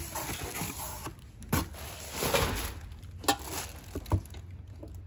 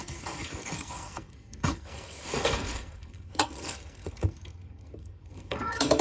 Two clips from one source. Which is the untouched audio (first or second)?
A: first